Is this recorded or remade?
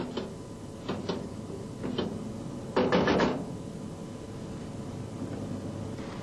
recorded